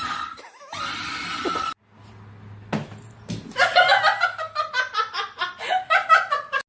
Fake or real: real